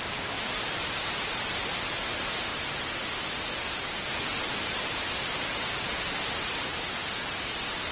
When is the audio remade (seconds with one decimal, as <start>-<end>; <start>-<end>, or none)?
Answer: 0.0-2.5; 4.1-6.7